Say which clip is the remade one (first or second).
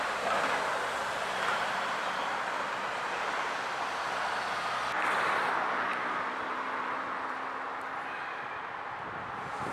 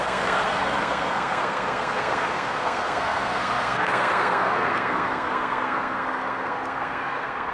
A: second